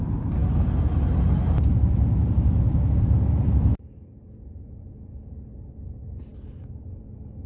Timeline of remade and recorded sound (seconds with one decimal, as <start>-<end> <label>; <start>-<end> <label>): 0.0-7.5 recorded